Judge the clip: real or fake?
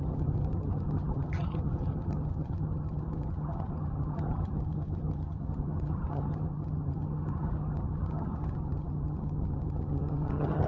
fake